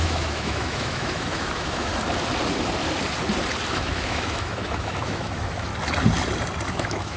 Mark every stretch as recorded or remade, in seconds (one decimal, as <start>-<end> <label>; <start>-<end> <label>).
0.0-1.9 remade; 1.9-3.7 recorded; 3.7-5.7 remade; 5.7-6.7 recorded; 6.7-7.2 remade